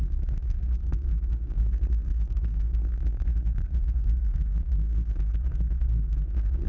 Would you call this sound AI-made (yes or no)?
yes